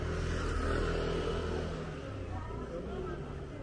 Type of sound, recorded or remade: recorded